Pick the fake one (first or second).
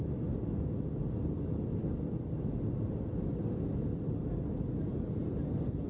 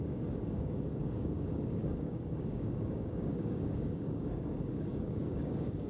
second